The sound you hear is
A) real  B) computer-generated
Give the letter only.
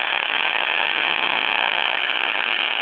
B